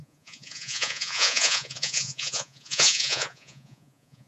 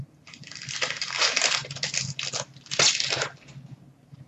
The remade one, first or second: first